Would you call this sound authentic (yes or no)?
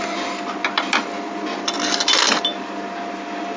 yes